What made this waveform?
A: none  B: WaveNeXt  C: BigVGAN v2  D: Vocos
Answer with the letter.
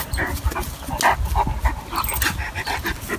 A